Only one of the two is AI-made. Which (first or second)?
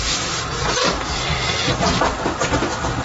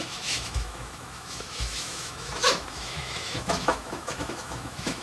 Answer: second